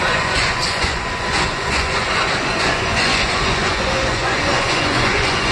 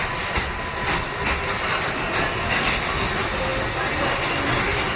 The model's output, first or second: first